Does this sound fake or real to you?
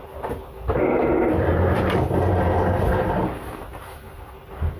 real